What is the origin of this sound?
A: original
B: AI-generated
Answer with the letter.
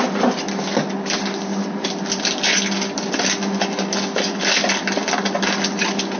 A